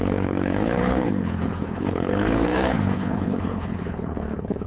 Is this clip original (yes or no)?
no